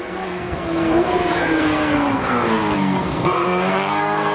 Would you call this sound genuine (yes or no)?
no